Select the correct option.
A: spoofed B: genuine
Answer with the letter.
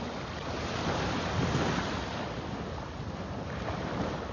B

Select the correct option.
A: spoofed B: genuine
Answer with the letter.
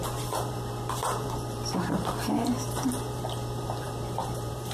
A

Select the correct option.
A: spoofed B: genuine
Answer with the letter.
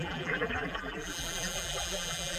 A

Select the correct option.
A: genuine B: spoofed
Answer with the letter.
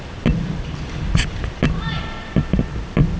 A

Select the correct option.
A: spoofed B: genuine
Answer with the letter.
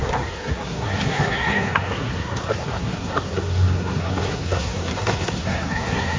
A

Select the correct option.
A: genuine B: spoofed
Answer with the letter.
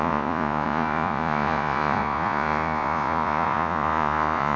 B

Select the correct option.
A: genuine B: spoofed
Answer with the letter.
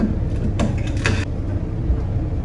A